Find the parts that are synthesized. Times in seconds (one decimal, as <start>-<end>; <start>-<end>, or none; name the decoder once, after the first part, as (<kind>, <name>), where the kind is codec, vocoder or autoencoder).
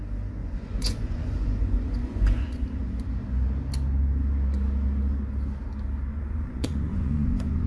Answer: 0.4-2.8 (vocoder, Vocos); 6.1-7.7